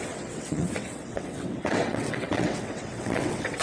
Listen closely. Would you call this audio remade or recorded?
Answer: remade